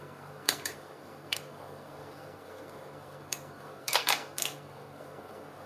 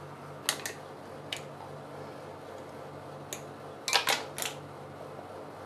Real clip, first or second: second